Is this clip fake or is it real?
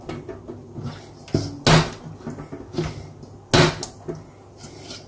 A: real